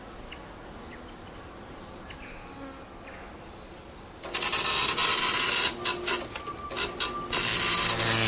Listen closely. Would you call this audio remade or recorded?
recorded